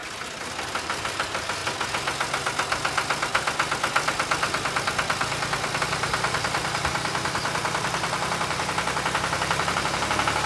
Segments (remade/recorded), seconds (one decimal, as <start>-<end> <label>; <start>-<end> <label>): 0.0-0.8 recorded; 0.8-1.6 remade; 1.6-5.8 recorded; 5.8-10.5 remade